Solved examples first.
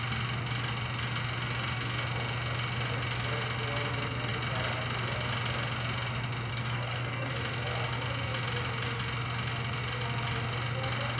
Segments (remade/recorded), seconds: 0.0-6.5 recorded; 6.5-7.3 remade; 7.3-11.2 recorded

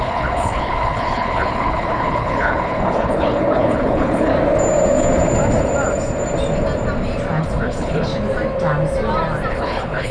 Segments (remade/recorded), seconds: 0.0-4.3 remade; 4.3-7.4 recorded; 7.4-8.1 remade; 8.1-9.5 recorded; 9.5-10.1 remade

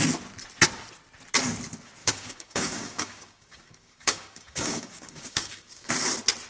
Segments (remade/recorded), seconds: 0.0-2.0 recorded; 2.0-5.9 remade; 5.9-6.5 recorded

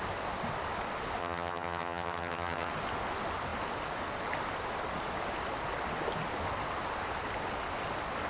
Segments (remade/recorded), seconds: 0.0-1.2 recorded; 1.2-2.7 remade; 2.7-8.3 recorded